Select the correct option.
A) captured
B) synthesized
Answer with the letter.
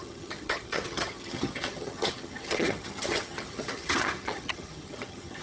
B